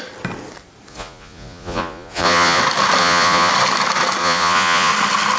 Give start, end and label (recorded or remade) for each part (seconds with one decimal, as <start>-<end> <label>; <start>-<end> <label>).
0.0-0.9 recorded; 0.9-2.6 remade; 2.6-3.0 recorded; 3.0-3.5 remade; 3.5-4.2 recorded; 4.2-4.9 remade; 4.9-5.4 recorded